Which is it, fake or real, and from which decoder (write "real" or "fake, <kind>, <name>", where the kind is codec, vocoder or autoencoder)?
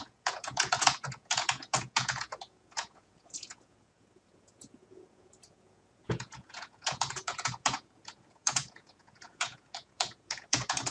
fake, vocoder, Vocos